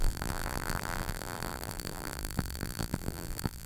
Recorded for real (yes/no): no